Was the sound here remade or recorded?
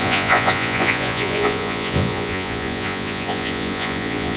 remade